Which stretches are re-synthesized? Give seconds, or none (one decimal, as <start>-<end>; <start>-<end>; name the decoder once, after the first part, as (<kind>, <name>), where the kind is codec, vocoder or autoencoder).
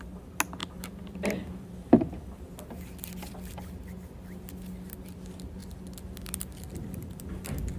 none